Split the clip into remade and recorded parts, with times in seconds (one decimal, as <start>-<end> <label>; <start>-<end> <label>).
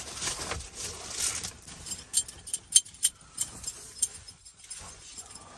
0.0-3.5 recorded; 3.5-5.6 remade